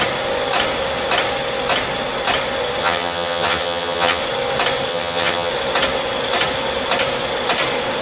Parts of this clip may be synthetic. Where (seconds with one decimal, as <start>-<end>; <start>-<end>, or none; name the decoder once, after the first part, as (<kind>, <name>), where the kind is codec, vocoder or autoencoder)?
2.8-4.2 (vocoder, HiFi-GAN); 4.9-5.5